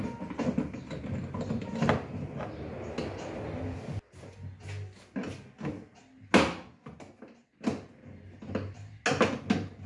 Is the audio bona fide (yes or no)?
yes